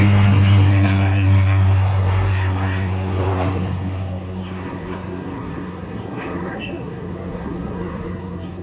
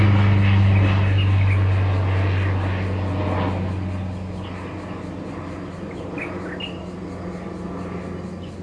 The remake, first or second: first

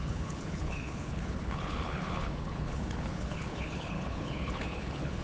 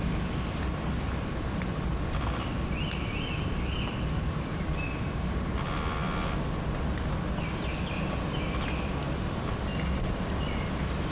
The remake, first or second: first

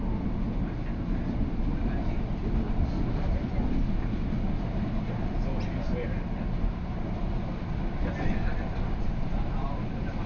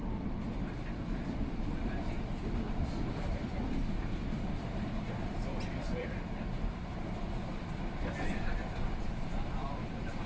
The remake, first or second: second